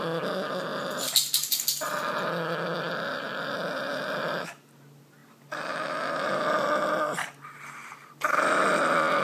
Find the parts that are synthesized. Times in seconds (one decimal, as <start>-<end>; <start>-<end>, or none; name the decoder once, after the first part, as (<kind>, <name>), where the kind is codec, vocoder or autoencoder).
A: none